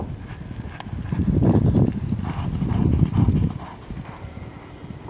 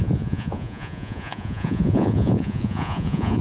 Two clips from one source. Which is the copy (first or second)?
second